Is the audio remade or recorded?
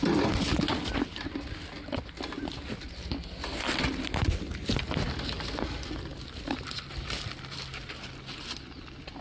recorded